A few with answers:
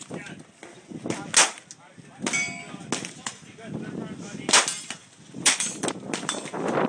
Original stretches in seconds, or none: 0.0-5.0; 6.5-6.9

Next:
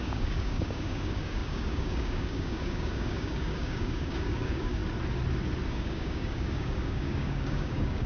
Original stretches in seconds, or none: 4.8-5.7